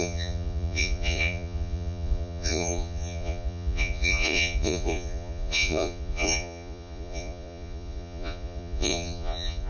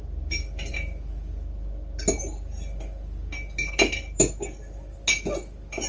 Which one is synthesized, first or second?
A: first